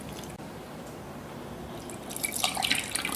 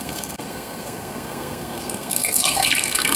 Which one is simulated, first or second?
second